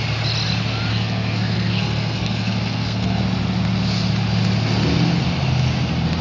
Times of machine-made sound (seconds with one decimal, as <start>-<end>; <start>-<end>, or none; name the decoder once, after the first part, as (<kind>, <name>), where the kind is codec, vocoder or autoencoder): 0.9-3.2 (codec, SNAC)